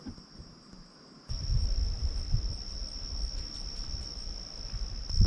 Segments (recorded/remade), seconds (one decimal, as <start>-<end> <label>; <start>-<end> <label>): 0.0-5.3 recorded